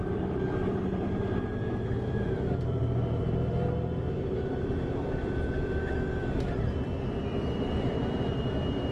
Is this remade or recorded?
remade